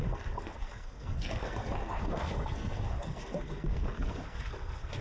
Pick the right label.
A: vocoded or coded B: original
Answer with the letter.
A